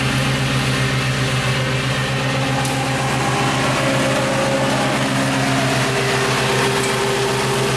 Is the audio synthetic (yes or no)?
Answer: no